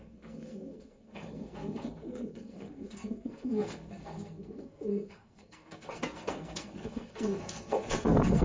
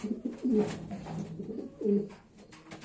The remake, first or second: first